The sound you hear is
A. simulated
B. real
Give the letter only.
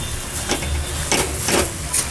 B